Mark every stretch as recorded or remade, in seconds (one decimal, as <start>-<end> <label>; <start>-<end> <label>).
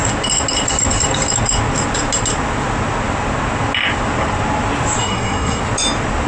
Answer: 0.0-5.0 recorded; 5.0-5.6 remade; 5.6-6.3 recorded